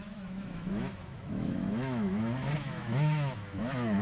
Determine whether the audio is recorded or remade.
remade